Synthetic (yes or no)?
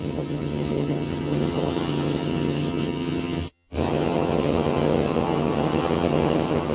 yes